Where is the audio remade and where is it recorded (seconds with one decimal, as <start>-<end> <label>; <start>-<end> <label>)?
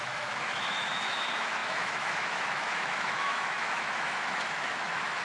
0.0-5.2 remade